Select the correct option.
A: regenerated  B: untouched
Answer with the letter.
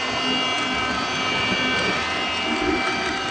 B